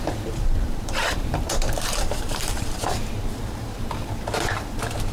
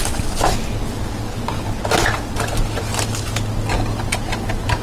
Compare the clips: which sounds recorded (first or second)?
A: second